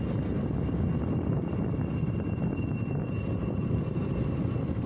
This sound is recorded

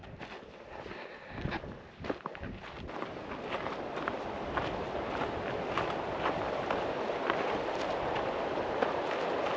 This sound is recorded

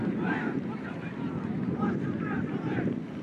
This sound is recorded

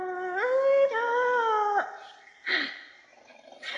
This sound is recorded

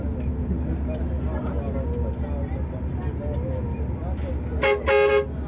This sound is recorded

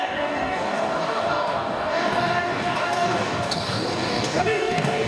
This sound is remade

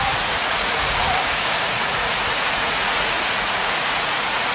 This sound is remade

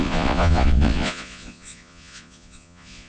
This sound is remade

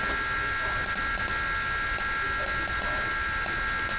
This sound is recorded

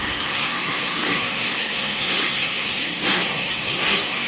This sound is remade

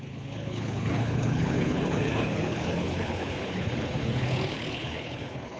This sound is remade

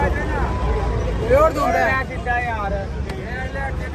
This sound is recorded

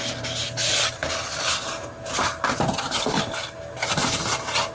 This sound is recorded